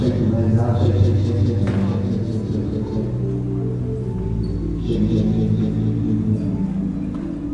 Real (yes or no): yes